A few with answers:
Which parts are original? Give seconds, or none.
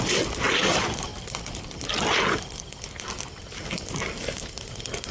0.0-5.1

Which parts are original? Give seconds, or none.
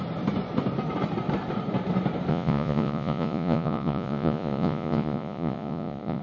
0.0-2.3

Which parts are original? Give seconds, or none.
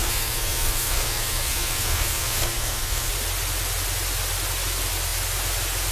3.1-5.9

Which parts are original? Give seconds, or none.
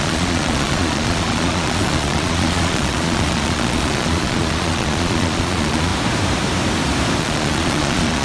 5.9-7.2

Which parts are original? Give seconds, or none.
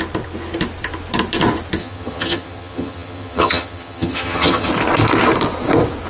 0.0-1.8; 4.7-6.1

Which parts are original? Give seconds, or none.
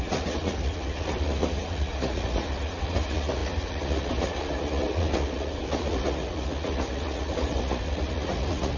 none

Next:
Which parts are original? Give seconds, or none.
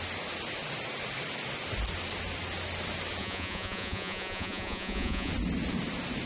0.0-3.2; 5.3-6.3